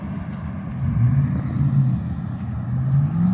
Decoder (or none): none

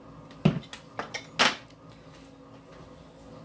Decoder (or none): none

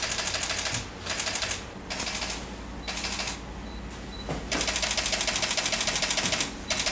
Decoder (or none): none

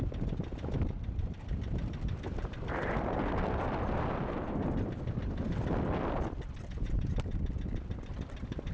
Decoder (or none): vocoder, BigVGAN v2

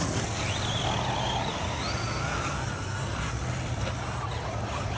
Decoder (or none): none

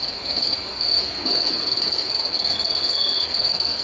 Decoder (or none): codec, SNAC